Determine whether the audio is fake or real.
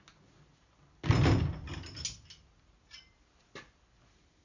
real